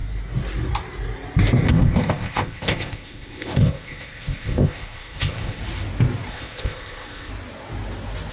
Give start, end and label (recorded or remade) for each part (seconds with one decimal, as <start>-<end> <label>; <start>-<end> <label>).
0.0-1.7 recorded; 1.7-5.6 remade; 5.6-6.3 recorded; 6.3-7.3 remade; 7.3-8.3 recorded